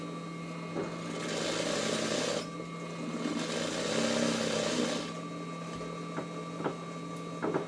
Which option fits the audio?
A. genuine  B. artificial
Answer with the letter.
A